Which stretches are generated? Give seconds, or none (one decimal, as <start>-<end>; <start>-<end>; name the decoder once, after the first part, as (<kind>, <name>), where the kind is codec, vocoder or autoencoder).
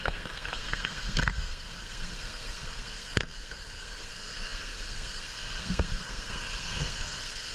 0.0-7.5 (codec, SNAC)